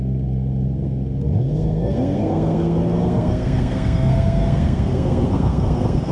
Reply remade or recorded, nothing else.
remade